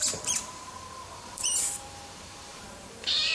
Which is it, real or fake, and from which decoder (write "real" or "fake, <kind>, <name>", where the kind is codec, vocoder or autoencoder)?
fake, vocoder, BigVGAN v2